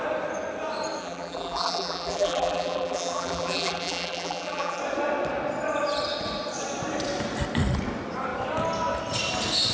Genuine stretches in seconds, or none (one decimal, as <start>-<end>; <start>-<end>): 0.0-1.0; 4.8-9.7